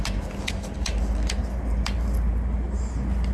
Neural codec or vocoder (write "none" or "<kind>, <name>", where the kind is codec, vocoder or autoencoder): none